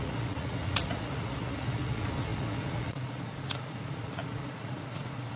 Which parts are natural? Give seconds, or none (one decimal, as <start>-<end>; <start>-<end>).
none